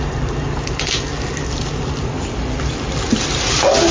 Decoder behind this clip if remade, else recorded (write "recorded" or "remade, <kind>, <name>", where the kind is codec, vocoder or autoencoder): recorded